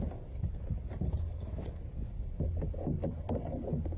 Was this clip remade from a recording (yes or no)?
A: no